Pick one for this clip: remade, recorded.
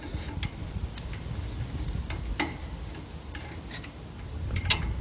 recorded